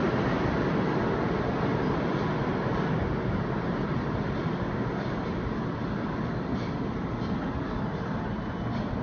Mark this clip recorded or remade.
recorded